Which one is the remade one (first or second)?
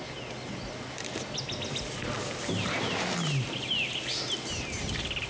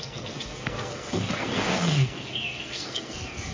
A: second